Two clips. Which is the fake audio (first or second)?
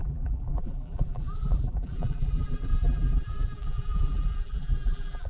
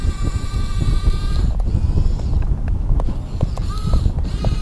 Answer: first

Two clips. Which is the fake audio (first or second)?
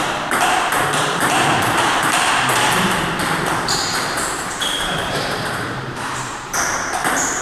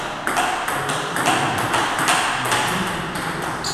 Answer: first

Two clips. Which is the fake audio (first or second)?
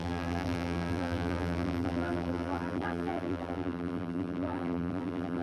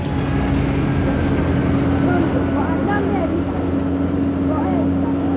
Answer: first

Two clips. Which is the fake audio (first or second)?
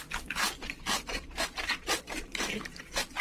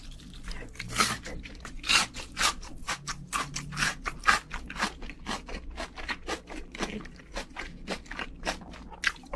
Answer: first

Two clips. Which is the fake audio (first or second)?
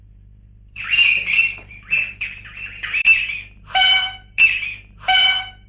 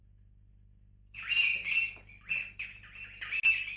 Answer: first